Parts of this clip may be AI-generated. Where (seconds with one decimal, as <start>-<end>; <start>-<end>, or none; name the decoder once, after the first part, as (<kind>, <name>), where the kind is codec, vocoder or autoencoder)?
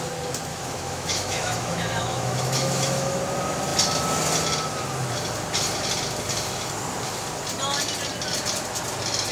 0.5-3.2 (autoencoder, DAC-VAE)